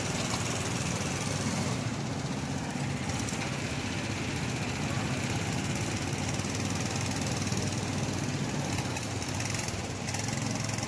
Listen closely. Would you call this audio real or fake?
real